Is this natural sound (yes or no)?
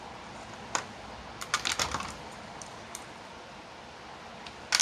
yes